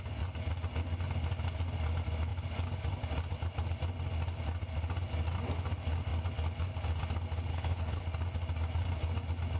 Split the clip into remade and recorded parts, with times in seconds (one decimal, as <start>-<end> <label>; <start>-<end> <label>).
0.0-7.5 recorded; 7.5-8.0 remade; 8.0-9.6 recorded